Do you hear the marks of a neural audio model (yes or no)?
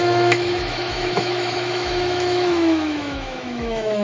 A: yes